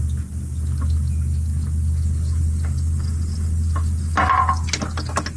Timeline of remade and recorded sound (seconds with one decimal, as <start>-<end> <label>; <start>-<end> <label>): 0.0-5.4 recorded